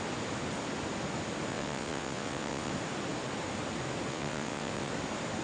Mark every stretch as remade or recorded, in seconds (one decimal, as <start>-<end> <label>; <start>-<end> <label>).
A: 0.0-1.5 recorded; 1.5-2.7 remade; 2.7-4.1 recorded; 4.1-4.9 remade; 4.9-5.4 recorded